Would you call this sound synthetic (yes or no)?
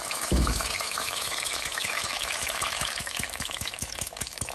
yes